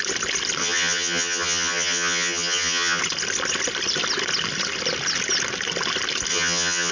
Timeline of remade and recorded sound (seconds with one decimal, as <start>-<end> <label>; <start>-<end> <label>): 0.0-0.6 recorded; 0.6-3.0 remade; 3.0-6.3 recorded; 6.3-6.9 remade